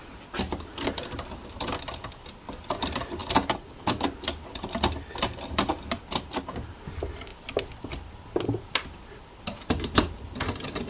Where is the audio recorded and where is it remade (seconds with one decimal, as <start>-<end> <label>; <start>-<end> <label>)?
0.0-10.9 recorded